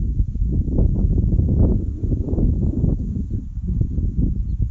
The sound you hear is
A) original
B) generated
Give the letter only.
B